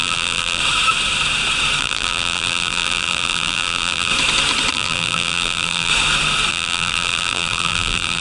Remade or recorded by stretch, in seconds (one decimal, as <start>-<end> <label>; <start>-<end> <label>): 0.0-0.6 remade; 0.6-1.8 recorded; 1.8-4.1 remade; 4.1-4.7 recorded; 4.7-5.9 remade; 5.9-6.5 recorded; 6.5-8.2 remade